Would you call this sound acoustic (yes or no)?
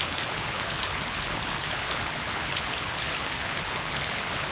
no